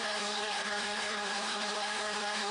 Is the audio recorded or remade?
remade